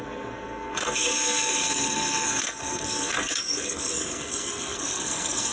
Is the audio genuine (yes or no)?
no